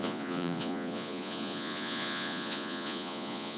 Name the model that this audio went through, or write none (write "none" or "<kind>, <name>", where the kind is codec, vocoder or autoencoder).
vocoder, Vocos